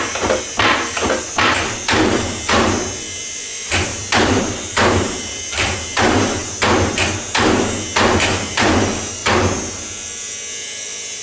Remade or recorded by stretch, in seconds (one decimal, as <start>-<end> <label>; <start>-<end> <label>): 0.0-6.4 remade; 6.4-8.5 recorded; 8.5-9.2 remade; 9.2-11.2 recorded